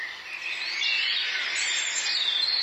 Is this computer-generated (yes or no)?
no